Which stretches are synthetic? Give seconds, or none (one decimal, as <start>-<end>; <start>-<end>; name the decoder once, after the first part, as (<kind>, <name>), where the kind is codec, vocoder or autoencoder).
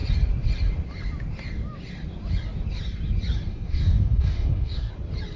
3.5-4.9 (codec, DAC)